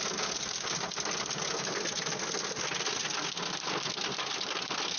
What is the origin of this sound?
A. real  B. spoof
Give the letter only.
A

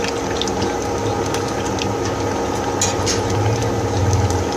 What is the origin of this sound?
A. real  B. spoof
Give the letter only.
A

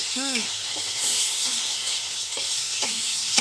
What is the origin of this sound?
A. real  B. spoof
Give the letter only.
B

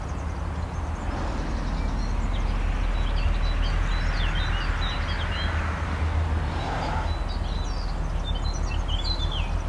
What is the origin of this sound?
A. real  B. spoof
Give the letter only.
A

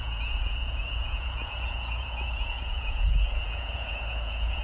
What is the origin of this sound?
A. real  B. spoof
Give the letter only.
B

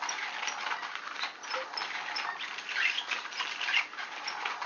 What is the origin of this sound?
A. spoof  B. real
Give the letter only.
B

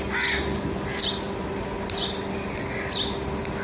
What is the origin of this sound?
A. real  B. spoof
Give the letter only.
A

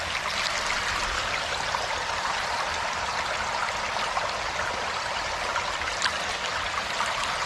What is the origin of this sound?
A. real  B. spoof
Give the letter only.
A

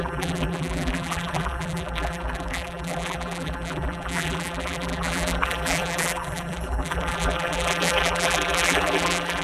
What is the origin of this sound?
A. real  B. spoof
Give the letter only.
B